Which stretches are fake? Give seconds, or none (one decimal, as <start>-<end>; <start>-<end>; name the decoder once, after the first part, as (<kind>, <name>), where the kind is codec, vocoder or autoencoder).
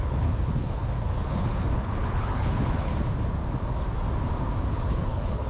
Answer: 0.0-2.9 (codec, HILCodec); 4.7-5.5